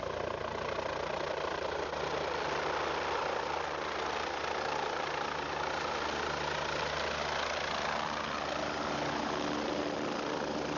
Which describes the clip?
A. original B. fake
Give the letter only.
A